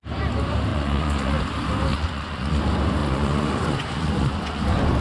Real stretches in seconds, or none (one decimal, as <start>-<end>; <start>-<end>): 0.0-0.7; 1.4-1.9; 2.6-3.0; 4.6-5.0